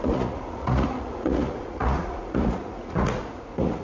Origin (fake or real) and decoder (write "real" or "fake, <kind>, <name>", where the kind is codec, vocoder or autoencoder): fake, vocoder, Vocos